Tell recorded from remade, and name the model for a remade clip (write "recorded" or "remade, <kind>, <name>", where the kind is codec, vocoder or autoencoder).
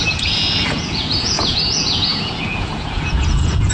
remade, vocoder, Vocos